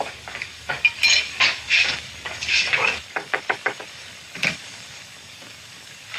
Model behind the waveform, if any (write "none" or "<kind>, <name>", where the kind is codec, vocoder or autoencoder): codec, DAC